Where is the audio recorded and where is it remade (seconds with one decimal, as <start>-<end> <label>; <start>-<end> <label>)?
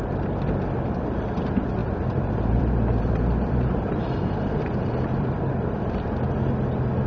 0.0-1.8 recorded; 1.8-6.1 remade; 6.1-7.1 recorded